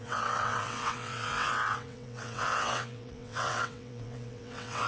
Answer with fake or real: fake